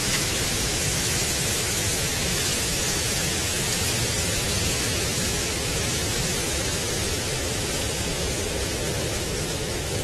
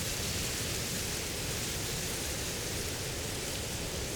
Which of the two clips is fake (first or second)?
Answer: first